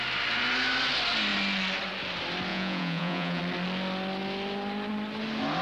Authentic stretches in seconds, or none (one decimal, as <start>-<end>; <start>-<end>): 0.0-2.5; 3.4-5.6